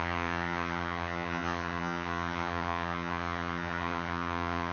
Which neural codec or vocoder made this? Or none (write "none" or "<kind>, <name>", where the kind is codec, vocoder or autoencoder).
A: vocoder, HiFi-GAN